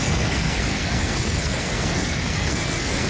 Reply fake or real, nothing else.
fake